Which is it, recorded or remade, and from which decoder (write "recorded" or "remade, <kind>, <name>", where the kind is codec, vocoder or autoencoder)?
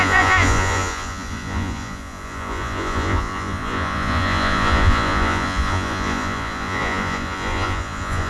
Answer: remade, vocoder, Vocos